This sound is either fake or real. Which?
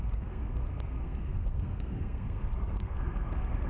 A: fake